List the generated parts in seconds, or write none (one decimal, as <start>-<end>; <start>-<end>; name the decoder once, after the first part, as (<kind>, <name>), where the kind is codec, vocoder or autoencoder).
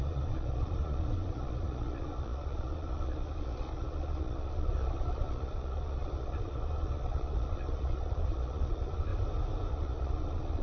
0.0-9.1 (vocoder, Vocos); 9.7-10.6